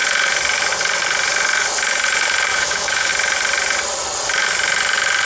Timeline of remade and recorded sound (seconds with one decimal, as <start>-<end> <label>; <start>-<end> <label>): 0.0-2.5 recorded; 2.5-3.1 remade; 3.1-5.3 recorded